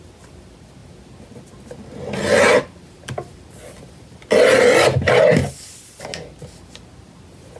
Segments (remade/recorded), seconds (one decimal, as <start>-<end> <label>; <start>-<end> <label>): 0.0-7.6 recorded